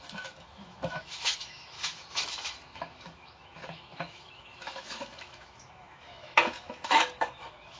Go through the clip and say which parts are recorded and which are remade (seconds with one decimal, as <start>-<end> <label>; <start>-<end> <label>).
0.0-7.8 remade